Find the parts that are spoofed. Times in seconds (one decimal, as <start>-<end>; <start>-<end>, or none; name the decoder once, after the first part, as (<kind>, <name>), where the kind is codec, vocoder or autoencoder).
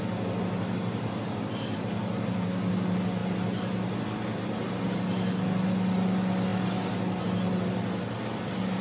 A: none